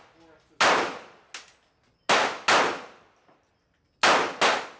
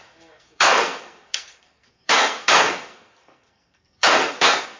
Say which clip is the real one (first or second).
first